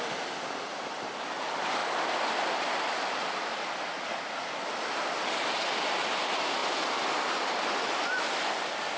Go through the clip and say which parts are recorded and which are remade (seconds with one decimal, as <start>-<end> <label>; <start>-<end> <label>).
0.0-9.0 recorded

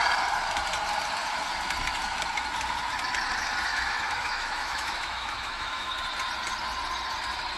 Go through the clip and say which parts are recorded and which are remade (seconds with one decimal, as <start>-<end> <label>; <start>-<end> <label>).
0.0-3.7 recorded; 3.7-6.0 remade; 6.0-7.6 recorded

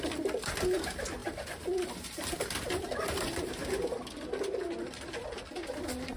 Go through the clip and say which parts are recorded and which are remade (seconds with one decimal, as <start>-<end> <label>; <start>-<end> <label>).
0.0-6.2 recorded

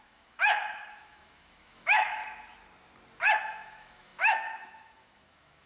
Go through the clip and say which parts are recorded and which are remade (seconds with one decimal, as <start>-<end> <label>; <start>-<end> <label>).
0.0-2.2 remade; 2.2-3.4 recorded; 3.4-5.7 remade

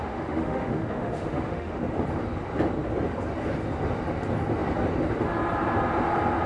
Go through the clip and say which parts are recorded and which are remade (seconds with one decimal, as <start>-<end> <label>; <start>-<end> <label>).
0.0-1.8 remade; 1.8-6.5 recorded

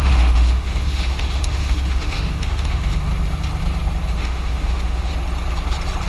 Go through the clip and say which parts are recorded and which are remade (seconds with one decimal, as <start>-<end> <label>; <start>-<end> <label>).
0.0-3.1 remade; 3.1-4.1 recorded; 4.1-5.1 remade; 5.1-6.1 recorded